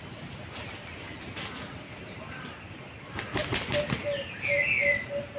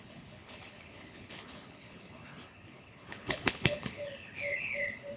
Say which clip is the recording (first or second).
first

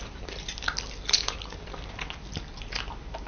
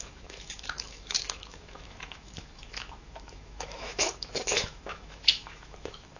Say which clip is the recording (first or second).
first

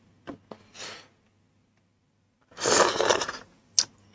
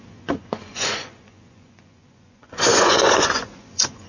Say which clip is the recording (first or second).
first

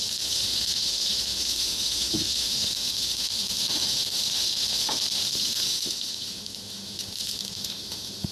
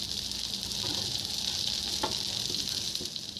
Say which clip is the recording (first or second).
second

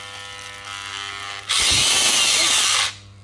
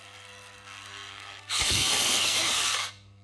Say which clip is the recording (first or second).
first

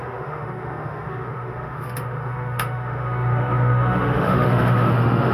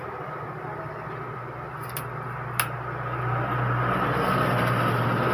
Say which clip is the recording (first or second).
second